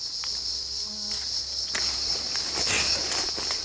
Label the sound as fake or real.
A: real